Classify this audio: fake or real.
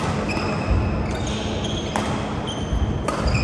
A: real